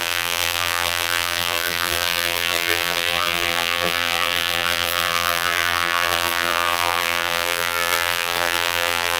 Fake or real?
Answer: fake